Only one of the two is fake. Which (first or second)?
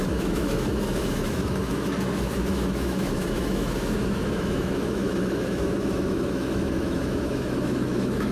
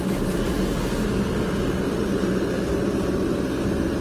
first